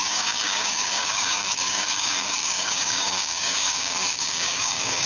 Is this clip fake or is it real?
fake